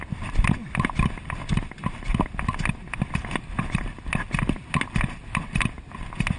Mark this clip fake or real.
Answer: real